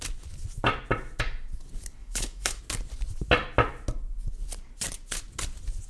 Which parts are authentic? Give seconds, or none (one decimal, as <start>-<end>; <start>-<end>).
0.0-2.0; 2.6-5.9